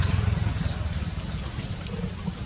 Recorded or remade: recorded